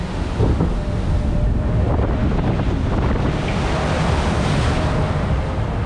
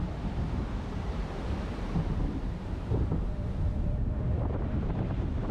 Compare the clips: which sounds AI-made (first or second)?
second